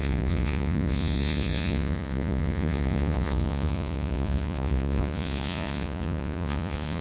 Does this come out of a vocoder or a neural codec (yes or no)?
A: yes